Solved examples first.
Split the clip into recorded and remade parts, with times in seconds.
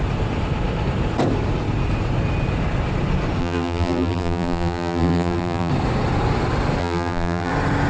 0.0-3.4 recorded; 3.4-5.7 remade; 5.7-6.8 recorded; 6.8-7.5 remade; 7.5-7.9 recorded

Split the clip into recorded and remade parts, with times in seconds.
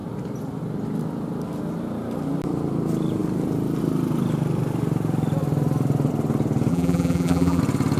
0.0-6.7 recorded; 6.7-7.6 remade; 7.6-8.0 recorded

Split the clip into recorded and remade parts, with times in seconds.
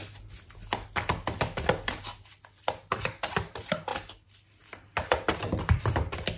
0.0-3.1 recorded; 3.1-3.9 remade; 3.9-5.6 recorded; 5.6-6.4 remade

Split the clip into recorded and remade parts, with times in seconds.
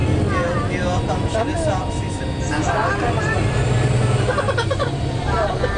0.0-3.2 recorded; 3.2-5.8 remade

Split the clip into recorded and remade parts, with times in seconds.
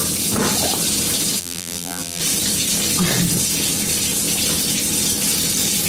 0.0-1.4 recorded; 1.4-2.2 remade; 2.2-5.9 recorded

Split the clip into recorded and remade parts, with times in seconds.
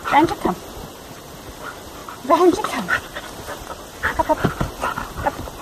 0.0-2.0 recorded; 2.0-4.5 remade; 4.5-5.6 recorded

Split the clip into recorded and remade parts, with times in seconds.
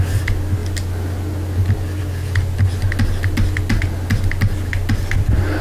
0.0-5.6 recorded